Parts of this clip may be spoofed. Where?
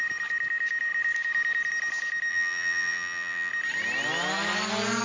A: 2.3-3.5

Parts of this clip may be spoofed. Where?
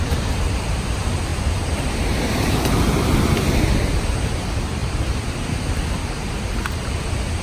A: none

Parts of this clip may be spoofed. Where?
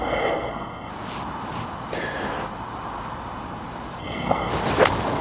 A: 0.0-0.9; 4.0-4.5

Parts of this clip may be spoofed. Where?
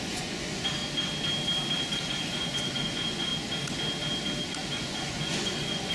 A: 0.0-0.8; 2.0-3.3; 4.7-5.9